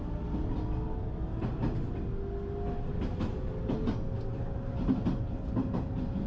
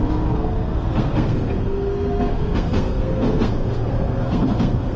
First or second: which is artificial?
second